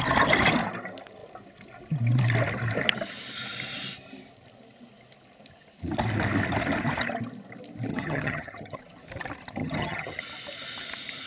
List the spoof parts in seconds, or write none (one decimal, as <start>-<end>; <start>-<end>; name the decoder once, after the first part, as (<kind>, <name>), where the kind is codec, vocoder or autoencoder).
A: 7.9-8.8 (vocoder, HiFi-GAN); 9.6-10.2